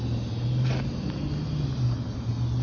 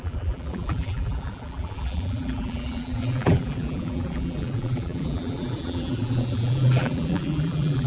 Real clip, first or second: first